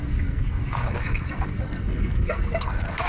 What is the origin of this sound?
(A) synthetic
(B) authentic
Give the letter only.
A